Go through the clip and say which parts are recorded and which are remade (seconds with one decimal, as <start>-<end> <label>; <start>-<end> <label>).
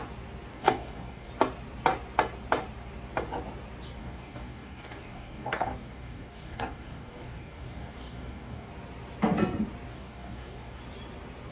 0.0-0.5 recorded; 0.5-1.3 remade; 1.3-4.0 recorded; 4.0-8.7 remade; 8.7-9.9 recorded; 9.9-10.8 remade; 10.8-11.5 recorded